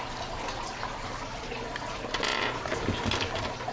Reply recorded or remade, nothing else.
recorded